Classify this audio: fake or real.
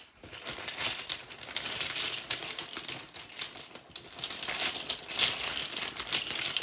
real